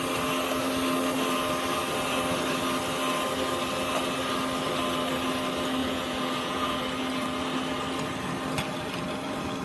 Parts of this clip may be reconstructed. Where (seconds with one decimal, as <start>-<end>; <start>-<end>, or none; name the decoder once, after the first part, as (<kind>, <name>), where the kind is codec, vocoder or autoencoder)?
5.8-6.8 (vocoder, Vocos)

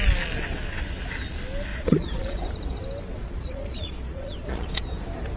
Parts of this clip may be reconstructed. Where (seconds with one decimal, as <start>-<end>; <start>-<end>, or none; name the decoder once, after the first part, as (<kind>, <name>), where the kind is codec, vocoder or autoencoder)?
1.7-2.5 (vocoder, Vocos); 3.1-4.8

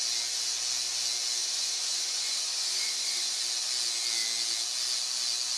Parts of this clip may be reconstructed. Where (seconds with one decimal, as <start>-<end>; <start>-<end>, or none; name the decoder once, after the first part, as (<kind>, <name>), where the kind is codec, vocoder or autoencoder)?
1.4-3.4 (vocoder, Vocos)

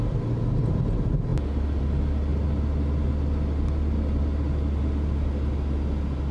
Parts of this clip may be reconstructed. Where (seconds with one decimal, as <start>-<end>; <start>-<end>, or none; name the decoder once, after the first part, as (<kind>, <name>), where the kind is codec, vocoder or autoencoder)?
none

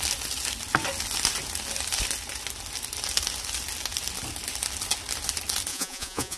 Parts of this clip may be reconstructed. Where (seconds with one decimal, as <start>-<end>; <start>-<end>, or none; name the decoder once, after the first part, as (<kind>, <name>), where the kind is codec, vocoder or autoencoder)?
5.7-6.4 (vocoder, Vocos)

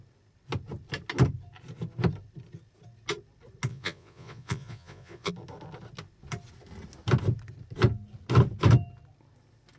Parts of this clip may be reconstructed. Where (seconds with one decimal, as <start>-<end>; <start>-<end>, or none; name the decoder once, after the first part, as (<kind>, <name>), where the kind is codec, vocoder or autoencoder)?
3.7-5.3 (vocoder, Vocos)

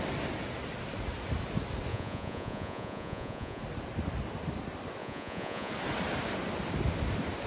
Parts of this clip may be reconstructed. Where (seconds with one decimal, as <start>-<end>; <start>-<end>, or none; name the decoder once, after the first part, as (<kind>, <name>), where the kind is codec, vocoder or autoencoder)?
1.9-3.6 (vocoder, Vocos); 5.0-5.7

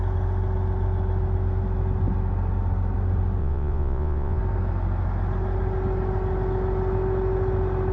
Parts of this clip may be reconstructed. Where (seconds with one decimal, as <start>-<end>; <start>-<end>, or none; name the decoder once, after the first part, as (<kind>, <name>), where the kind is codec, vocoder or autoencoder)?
3.4-4.4 (vocoder, Vocos)